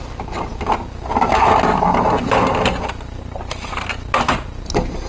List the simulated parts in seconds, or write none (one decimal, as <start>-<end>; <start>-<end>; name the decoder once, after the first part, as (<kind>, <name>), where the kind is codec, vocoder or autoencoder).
none